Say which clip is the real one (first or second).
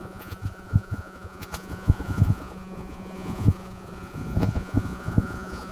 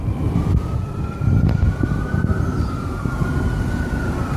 second